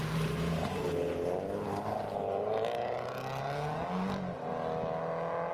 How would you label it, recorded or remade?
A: recorded